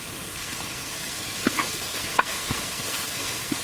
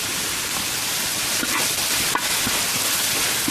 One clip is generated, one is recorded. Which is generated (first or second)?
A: first